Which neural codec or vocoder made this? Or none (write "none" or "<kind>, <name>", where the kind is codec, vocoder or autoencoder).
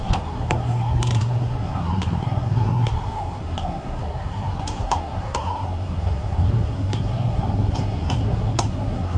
codec, SNAC